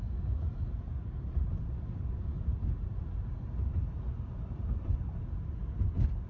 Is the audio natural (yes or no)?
yes